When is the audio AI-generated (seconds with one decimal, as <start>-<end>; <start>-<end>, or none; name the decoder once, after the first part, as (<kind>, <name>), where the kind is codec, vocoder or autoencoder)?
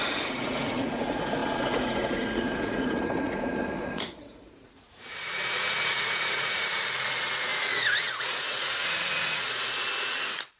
0.0-10.6 (vocoder, Vocos)